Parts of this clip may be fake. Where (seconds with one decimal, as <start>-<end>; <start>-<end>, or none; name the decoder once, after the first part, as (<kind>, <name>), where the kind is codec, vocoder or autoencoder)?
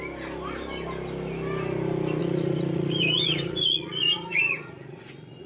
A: 2.2-5.5 (vocoder, Vocos)